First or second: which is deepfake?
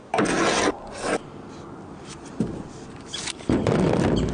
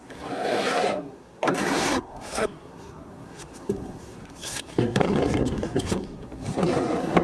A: second